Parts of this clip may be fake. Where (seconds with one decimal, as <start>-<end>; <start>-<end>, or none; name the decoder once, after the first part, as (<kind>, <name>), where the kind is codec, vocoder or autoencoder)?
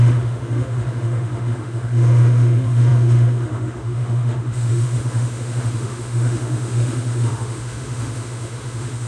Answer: 0.0-9.1 (autoencoder, DAC-VAE)